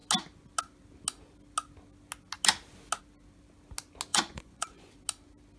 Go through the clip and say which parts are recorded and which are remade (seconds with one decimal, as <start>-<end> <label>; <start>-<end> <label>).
0.0-4.1 recorded; 4.1-4.9 remade; 4.9-5.6 recorded